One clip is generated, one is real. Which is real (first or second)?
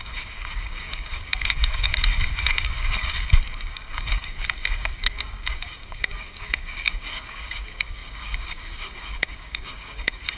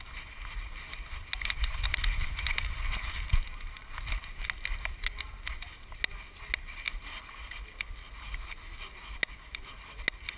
second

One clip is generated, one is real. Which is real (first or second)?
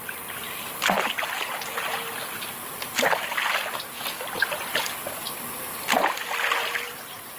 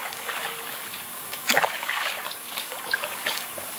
first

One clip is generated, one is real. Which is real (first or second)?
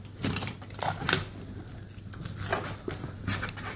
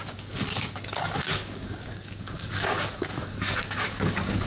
first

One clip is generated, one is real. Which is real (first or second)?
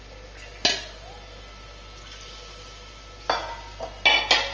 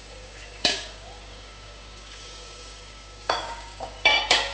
first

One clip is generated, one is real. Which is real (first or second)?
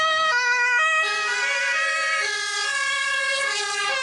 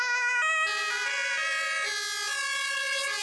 second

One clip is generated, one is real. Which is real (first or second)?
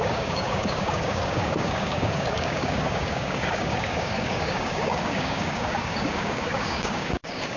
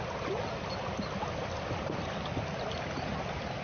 second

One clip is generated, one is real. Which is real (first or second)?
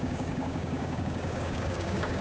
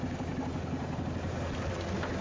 second